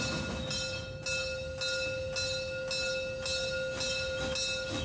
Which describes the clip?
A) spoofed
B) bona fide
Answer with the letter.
B